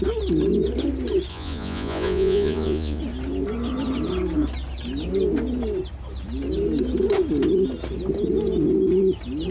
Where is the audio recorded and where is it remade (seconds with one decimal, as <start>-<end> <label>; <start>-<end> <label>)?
0.0-1.3 recorded; 1.3-3.0 remade; 3.0-9.5 recorded